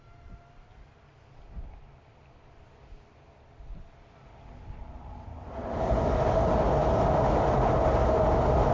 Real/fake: real